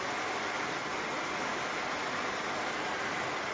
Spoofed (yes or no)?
no